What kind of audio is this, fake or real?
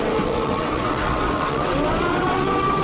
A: fake